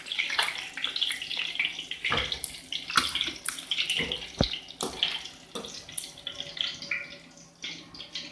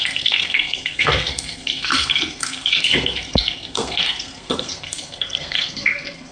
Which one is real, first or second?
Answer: first